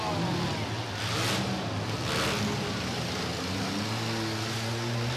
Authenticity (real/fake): real